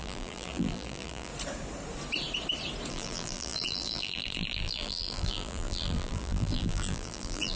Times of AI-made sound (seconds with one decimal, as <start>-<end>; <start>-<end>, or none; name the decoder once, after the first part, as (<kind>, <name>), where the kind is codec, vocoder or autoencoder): 0.0-1.3 (vocoder, BigVGAN v2); 2.9-7.6